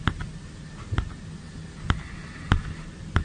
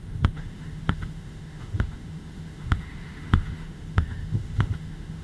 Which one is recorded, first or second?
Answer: first